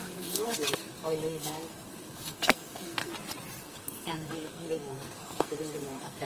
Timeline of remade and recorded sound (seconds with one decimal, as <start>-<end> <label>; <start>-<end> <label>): 0.0-3.1 remade; 3.1-3.6 recorded; 3.6-6.2 remade